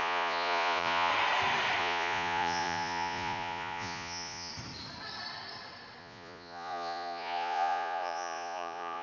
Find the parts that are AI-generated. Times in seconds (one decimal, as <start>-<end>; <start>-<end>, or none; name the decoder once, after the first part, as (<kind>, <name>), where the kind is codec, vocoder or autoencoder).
0.0-1.1 (vocoder, Vocos); 1.8-4.5; 6.0-9.0